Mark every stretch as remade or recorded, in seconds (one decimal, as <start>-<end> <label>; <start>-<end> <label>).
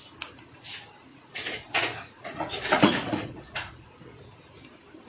0.0-1.1 recorded; 1.1-4.0 remade; 4.0-5.1 recorded